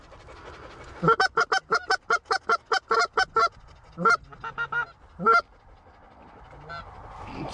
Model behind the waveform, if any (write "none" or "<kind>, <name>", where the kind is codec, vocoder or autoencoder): none